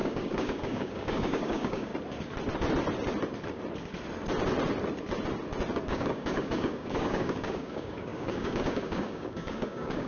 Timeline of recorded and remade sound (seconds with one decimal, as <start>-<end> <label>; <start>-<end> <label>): 0.0-1.9 remade; 1.9-5.9 recorded; 5.9-10.1 remade